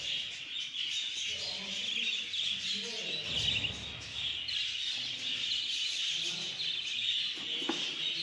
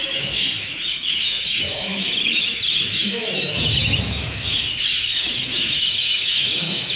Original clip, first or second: first